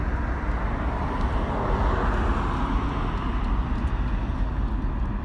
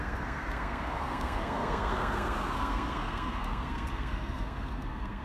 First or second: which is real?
first